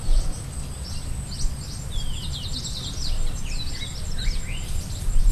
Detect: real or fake real